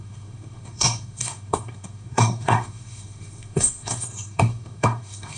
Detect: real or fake fake